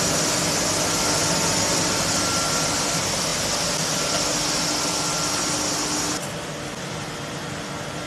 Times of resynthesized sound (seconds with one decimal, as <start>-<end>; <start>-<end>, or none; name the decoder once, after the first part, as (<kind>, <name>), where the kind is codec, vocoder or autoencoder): none